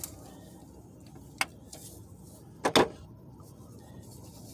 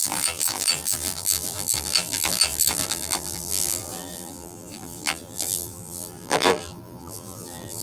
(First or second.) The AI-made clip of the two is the second